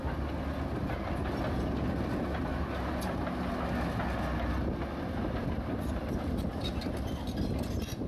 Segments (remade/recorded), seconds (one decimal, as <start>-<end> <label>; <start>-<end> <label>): 0.0-2.5 recorded; 2.5-3.5 remade; 3.5-8.1 recorded